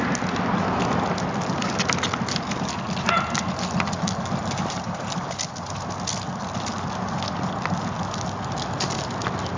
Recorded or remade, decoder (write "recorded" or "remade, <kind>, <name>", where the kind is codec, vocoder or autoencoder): recorded